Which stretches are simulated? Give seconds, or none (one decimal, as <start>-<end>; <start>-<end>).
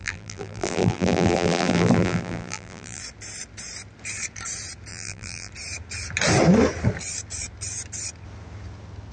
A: 0.0-3.0; 4.9-5.5